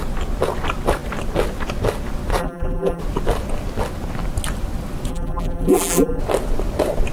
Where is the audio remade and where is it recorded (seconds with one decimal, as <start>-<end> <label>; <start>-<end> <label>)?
0.0-2.4 recorded; 2.4-3.0 remade; 3.0-5.1 recorded; 5.1-6.2 remade; 6.2-7.1 recorded